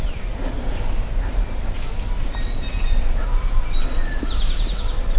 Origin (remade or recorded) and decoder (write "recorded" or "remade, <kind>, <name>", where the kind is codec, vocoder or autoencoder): recorded